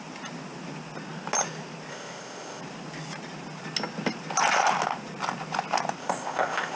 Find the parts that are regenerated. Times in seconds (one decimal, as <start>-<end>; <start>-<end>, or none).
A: 1.9-2.6; 6.0-6.8